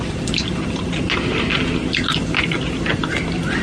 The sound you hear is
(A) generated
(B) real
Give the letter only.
B